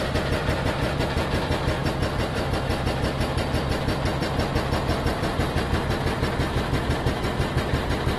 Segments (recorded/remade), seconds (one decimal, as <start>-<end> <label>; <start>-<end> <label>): 0.0-8.2 remade